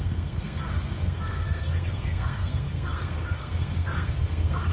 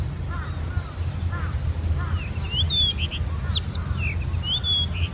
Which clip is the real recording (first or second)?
second